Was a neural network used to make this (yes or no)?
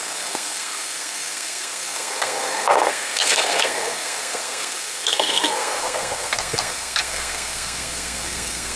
yes